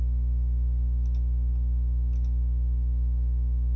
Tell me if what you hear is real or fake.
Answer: real